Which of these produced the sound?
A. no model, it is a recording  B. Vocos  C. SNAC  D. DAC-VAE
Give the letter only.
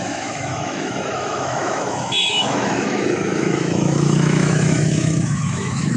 D